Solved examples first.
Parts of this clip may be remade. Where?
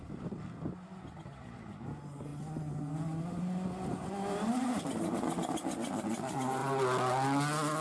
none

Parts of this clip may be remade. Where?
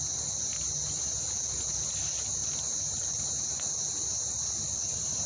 none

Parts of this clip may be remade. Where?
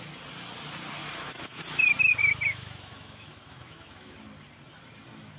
1.0-1.6 (autoencoder, DAC-VAE); 2.2-4.1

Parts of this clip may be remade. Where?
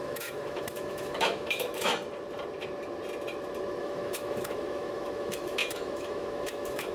0.0-1.9 (autoencoder, DAC-VAE); 3.8-6.9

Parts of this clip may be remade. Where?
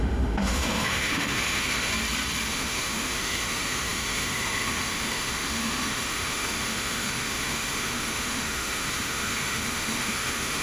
0.0-1.9 (autoencoder, DAC-VAE); 2.5-10.6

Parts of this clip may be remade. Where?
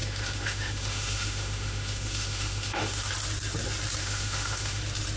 0.0-3.1 (autoencoder, DAC-VAE); 4.0-4.8